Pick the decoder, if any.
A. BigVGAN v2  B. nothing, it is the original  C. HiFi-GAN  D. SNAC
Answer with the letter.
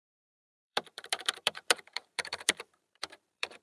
A